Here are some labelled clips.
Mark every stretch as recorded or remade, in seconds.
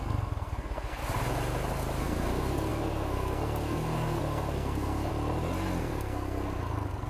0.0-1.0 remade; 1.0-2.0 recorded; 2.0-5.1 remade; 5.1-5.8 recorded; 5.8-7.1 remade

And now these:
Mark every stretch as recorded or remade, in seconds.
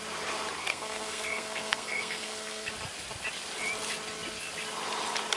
0.0-0.7 recorded; 0.7-2.7 remade; 2.7-5.4 recorded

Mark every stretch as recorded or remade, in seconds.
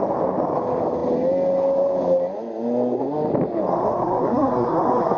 0.0-3.7 recorded; 3.7-5.2 remade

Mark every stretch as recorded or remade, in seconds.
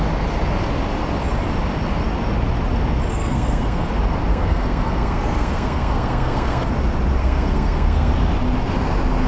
0.0-3.1 recorded; 3.1-3.9 remade; 3.9-4.3 recorded; 4.3-6.7 remade; 6.7-7.2 recorded; 7.2-8.1 remade; 8.1-9.3 recorded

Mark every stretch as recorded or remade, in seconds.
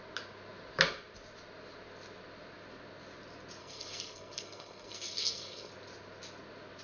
0.0-3.6 recorded; 3.6-5.7 remade; 5.7-6.8 recorded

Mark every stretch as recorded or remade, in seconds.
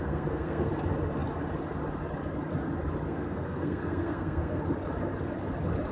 0.0-0.7 remade; 0.7-3.1 recorded; 3.1-4.6 remade; 4.6-5.9 recorded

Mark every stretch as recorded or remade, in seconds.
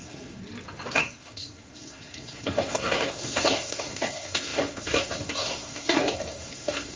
0.0-0.4 remade; 0.4-0.9 recorded; 0.9-7.0 remade